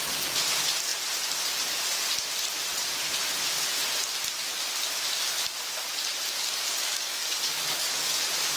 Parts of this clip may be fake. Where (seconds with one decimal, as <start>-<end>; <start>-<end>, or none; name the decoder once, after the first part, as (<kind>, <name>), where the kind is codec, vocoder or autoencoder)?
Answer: 6.8-8.2 (codec, DAC)